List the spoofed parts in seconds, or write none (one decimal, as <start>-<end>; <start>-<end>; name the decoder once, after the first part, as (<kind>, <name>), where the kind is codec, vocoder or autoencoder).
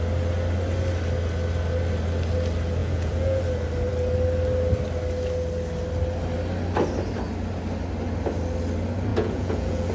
2.8-3.4 (vocoder, Vocos); 9.1-9.9